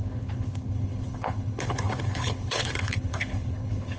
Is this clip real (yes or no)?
no